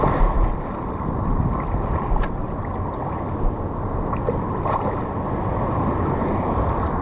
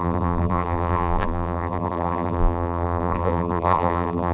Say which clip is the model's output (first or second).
second